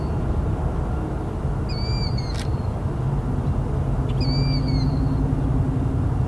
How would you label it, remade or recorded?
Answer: recorded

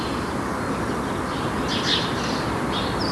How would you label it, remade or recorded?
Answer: recorded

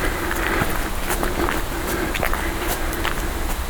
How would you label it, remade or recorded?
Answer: recorded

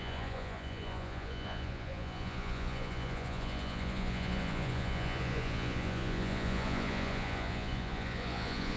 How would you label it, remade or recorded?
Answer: remade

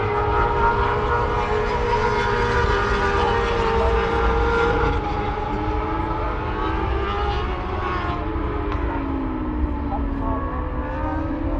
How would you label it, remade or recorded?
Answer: recorded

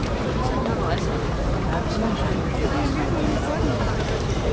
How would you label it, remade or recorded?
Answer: remade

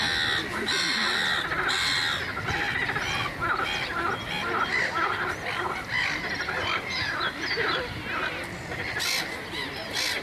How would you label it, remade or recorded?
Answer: recorded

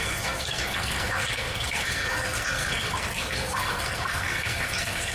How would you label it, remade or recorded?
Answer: remade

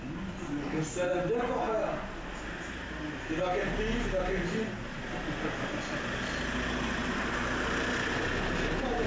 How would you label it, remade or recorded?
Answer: recorded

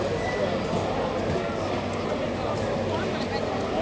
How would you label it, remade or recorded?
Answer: recorded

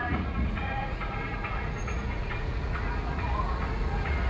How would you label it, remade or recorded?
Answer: remade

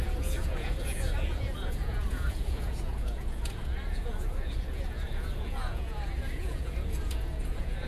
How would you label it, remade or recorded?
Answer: remade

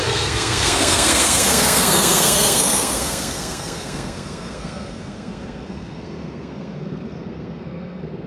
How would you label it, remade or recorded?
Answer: remade